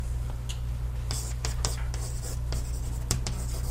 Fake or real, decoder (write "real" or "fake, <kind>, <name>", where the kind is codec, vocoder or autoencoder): real